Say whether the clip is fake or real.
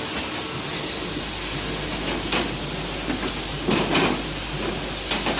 real